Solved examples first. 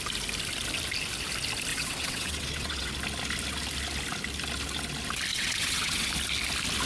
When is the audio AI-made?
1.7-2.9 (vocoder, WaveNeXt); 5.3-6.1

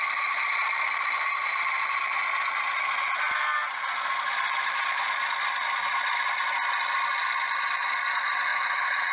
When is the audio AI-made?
8.5-9.1 (vocoder, WaveNeXt)